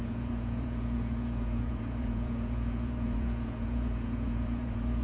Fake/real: fake